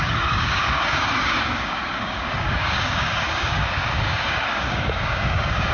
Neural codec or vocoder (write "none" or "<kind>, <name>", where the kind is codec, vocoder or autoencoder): codec, DAC